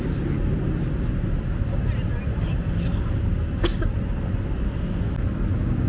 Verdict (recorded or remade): recorded